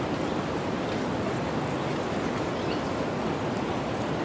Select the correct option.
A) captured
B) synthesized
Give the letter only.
A